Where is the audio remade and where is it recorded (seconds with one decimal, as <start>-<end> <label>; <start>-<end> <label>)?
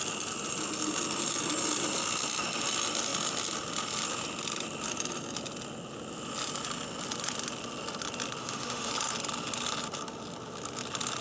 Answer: 0.0-8.4 recorded; 8.4-8.9 remade; 8.9-11.2 recorded